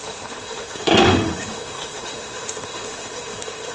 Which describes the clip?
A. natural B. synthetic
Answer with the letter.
B